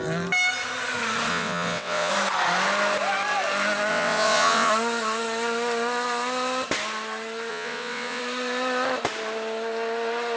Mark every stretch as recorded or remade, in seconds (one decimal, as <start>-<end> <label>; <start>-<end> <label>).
0.0-1.3 recorded; 1.3-2.1 remade; 2.1-3.9 recorded; 3.9-4.7 remade; 4.7-7.5 recorded; 7.5-8.2 remade; 8.2-10.4 recorded